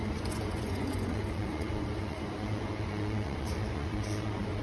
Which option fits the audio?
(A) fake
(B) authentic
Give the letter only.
A